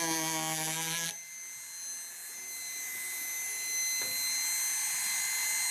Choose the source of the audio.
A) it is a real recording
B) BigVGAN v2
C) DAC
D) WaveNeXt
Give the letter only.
A